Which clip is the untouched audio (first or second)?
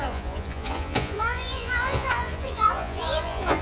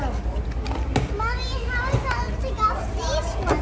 second